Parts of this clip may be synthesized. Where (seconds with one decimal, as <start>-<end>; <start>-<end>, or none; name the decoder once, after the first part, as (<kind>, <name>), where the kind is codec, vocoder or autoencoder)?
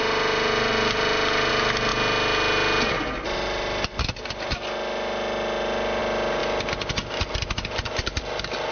none